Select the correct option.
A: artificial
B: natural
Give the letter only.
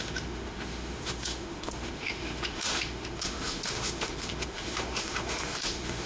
A